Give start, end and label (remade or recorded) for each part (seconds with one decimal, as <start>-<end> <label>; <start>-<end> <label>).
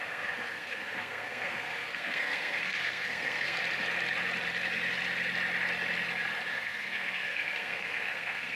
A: 0.0-3.6 remade; 3.6-6.5 recorded; 6.5-8.6 remade